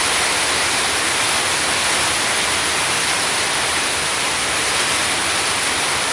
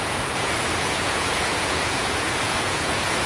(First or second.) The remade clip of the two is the second